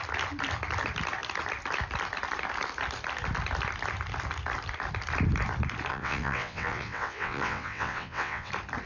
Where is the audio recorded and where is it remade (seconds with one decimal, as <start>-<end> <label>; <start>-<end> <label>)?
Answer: 0.0-5.9 recorded; 5.9-8.5 remade; 8.5-8.9 recorded